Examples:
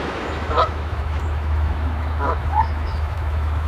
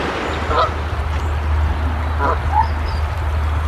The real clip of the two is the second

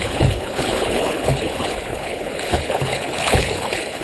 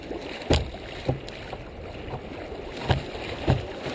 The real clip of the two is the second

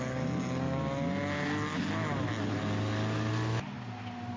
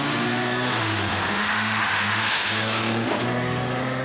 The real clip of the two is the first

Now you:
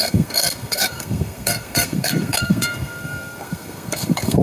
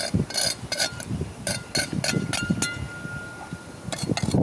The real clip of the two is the second